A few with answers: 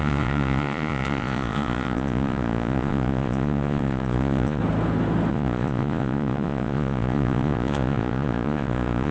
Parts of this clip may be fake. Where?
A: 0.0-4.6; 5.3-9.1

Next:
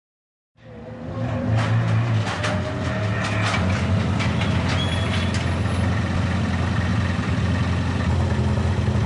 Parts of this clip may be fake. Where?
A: none

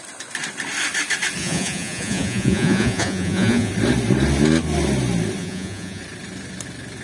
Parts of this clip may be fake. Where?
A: 1.4-3.7; 5.4-6.0

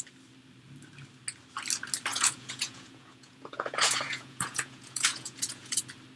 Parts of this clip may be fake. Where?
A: 2.1-5.8

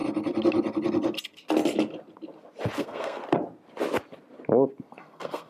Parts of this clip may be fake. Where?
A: 2.8-3.2; 4.9-5.5